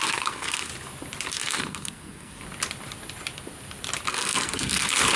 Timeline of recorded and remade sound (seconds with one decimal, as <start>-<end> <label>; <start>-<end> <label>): 0.0-0.7 remade; 0.7-1.3 recorded; 1.3-2.4 remade; 2.4-4.1 recorded; 4.1-5.2 remade